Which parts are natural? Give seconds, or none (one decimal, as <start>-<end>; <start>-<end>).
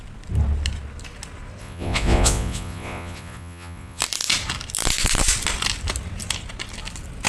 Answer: 0.0-1.6; 4.0-7.3